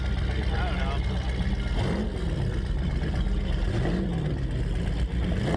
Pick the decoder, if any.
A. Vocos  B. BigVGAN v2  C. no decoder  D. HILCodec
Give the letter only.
C